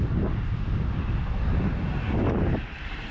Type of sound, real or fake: real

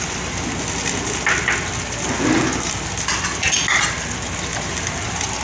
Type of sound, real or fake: real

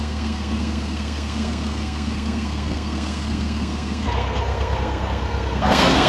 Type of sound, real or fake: fake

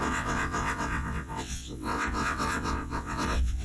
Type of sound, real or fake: fake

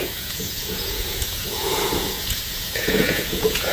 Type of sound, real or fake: fake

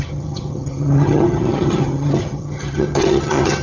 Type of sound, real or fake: fake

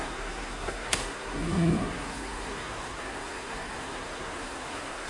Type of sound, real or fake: fake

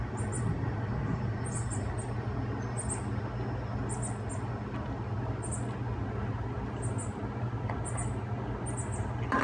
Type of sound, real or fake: real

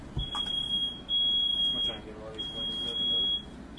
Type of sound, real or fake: real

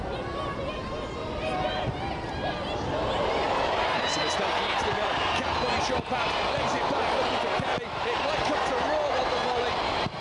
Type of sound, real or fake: real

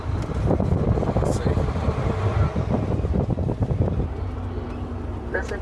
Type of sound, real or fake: real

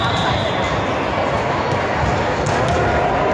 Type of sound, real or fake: real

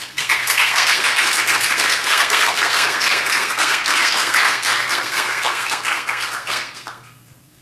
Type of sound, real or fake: fake